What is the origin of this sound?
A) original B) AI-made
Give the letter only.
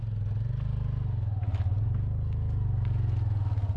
A